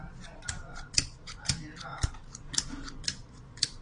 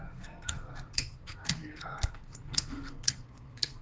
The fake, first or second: second